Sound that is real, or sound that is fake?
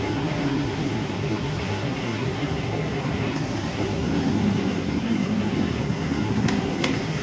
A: fake